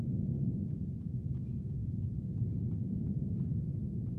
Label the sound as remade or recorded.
recorded